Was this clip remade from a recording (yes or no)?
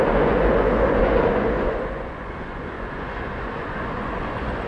yes